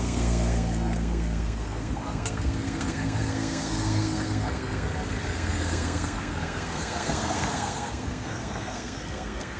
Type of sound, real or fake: fake